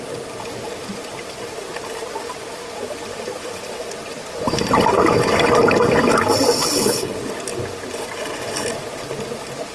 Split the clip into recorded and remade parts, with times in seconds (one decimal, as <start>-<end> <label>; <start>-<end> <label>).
0.0-6.6 recorded; 6.6-7.1 remade; 7.1-9.7 recorded

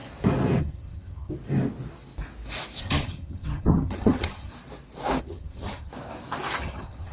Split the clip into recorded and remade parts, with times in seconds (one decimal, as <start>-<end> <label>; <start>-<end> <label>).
0.0-0.6 recorded; 0.6-1.3 remade; 1.3-2.8 recorded; 2.8-4.5 remade; 4.5-5.2 recorded; 5.2-5.9 remade; 5.9-6.6 recorded; 6.6-7.1 remade

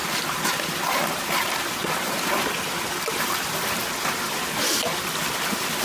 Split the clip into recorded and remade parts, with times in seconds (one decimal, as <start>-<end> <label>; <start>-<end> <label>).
0.0-5.8 recorded

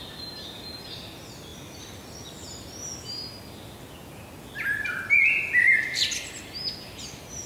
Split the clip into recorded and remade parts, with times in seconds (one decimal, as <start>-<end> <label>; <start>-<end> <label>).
0.0-7.5 recorded

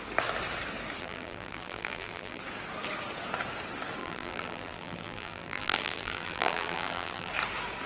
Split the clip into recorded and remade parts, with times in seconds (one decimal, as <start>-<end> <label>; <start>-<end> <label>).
0.0-1.0 recorded; 1.0-2.4 remade; 2.4-4.0 recorded; 4.0-7.3 remade; 7.3-7.9 recorded

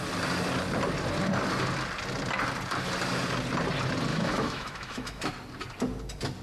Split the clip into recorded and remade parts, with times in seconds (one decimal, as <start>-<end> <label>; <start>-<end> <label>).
0.0-4.1 recorded; 4.1-5.3 remade; 5.3-6.4 recorded

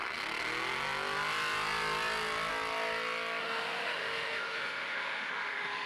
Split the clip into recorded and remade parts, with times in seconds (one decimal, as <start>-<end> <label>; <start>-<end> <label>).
0.0-3.4 recorded; 3.4-5.9 remade

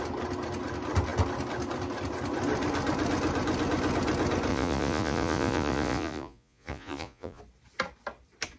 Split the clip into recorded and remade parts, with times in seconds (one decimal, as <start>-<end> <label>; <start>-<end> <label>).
0.0-4.5 recorded; 4.5-7.4 remade; 7.4-8.6 recorded